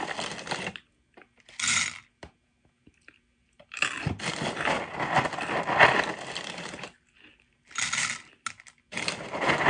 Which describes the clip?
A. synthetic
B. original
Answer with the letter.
B